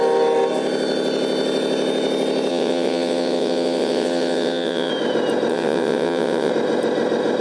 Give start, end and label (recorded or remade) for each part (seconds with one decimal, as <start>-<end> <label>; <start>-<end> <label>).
0.0-2.5 recorded; 2.5-4.9 remade; 4.9-5.5 recorded; 5.5-6.5 remade; 6.5-7.4 recorded